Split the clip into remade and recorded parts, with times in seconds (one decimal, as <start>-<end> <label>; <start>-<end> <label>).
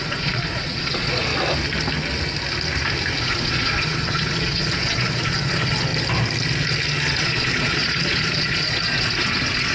0.0-1.3 remade; 1.3-3.2 recorded; 3.2-5.9 remade; 5.9-7.2 recorded; 7.2-9.7 remade